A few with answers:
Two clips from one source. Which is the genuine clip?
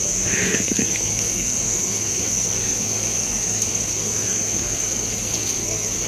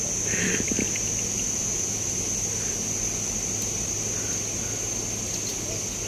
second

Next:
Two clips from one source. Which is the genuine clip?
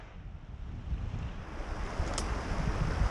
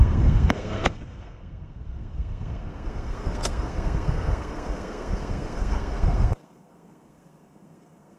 first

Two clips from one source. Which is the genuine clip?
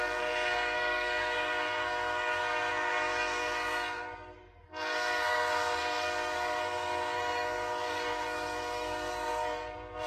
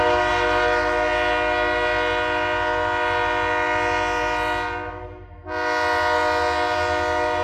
second